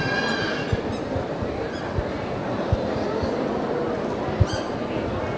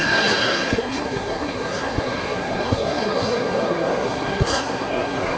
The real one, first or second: first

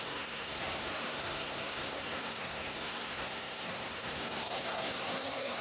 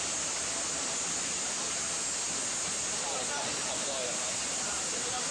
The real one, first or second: second